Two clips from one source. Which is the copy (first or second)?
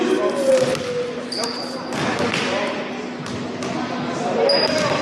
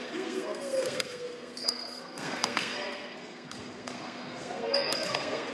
second